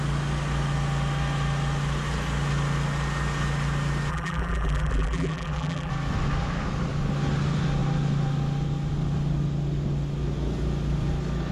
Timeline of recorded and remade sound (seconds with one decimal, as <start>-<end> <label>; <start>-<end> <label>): 0.0-4.1 recorded; 4.1-5.9 remade; 5.9-11.5 recorded